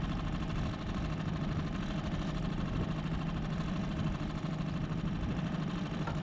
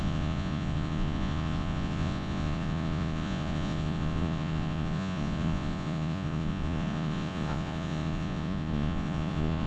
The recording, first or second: first